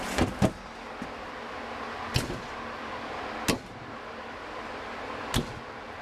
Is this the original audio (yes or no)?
yes